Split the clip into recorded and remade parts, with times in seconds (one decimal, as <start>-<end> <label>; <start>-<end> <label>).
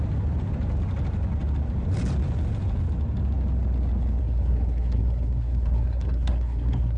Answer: 0.0-4.2 recorded; 4.2-7.0 remade